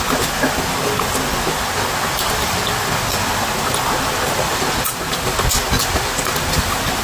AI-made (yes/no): no